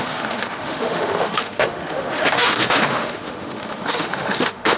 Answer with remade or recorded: remade